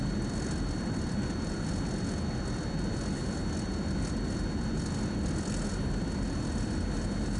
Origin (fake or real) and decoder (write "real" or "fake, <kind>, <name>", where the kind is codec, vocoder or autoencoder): real